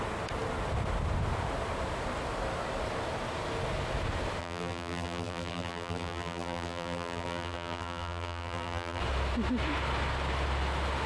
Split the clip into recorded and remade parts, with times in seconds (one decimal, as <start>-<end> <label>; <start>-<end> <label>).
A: 0.0-4.4 recorded; 4.4-9.0 remade; 9.0-11.1 recorded